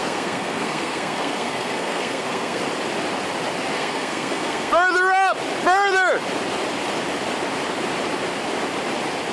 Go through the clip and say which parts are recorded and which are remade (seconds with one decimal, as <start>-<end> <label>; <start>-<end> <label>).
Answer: 0.0-2.6 remade; 2.6-3.7 recorded; 3.7-4.7 remade; 4.7-9.3 recorded